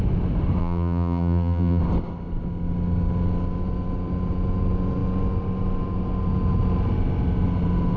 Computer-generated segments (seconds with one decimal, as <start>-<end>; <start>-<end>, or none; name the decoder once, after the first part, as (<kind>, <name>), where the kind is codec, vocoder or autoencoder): 0.6-1.8 (vocoder, BigVGAN v2)